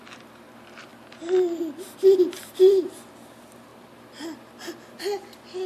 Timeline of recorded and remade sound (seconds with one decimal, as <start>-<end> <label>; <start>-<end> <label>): 0.0-3.7 remade; 3.7-5.0 recorded; 5.0-5.7 remade

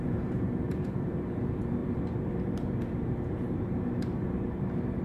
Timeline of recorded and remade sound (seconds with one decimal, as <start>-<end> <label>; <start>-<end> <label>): 0.0-5.0 remade

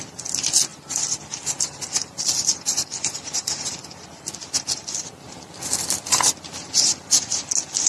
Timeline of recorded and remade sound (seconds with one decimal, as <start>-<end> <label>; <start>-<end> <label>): 0.0-0.7 recorded; 0.7-5.0 remade; 5.0-7.9 recorded